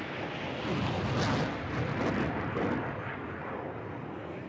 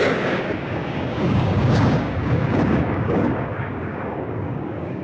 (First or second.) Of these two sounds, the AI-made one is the second